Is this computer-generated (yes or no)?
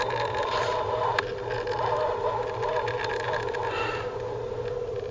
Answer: no